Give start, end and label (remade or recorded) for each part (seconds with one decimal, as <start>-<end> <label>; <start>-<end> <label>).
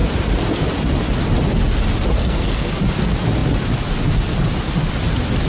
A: 0.0-2.2 recorded; 2.2-2.7 remade; 2.7-5.5 recorded